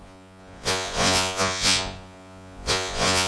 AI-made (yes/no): yes